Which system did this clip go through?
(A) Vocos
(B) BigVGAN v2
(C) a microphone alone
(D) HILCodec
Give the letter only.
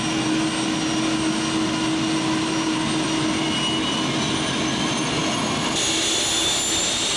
C